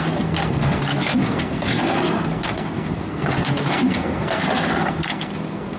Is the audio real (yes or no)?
no